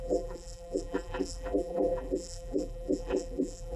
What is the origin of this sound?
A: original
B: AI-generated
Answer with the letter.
B